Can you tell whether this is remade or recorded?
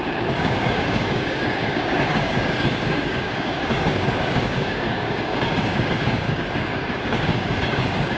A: remade